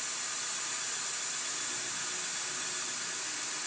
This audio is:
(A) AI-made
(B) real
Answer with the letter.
B